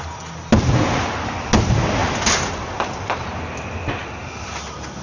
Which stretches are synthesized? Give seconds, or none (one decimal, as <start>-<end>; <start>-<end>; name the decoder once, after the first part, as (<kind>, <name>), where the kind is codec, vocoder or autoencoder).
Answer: 2.0-3.4 (vocoder, BigVGAN v2); 4.0-4.6